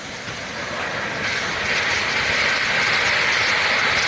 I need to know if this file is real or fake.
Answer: real